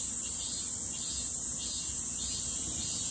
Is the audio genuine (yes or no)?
yes